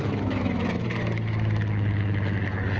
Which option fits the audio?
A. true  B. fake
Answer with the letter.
B